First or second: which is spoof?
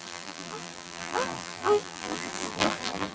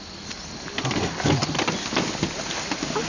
first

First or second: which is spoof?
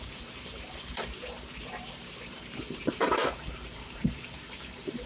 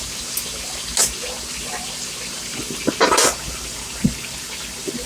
first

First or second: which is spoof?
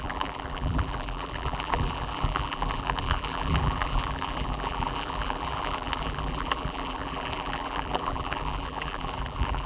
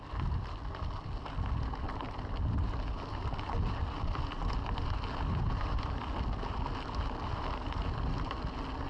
first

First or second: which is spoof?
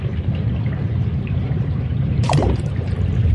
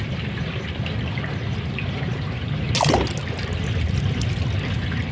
first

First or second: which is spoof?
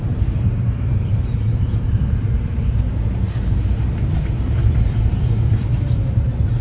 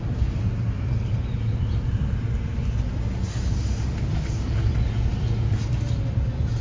first